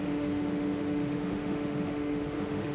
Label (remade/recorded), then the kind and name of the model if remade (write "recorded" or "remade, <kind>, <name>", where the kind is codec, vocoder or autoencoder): remade, autoencoder, DAC-VAE